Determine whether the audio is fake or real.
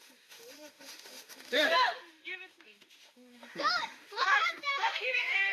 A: fake